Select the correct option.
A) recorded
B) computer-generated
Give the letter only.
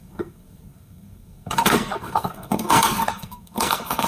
B